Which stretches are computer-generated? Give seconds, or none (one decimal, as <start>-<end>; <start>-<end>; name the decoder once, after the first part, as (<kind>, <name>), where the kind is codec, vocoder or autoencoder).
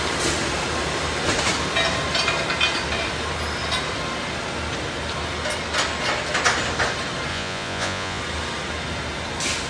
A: 7.3-8.2 (vocoder, Vocos)